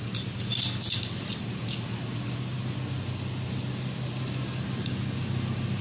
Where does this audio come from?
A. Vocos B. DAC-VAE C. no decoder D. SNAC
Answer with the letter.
C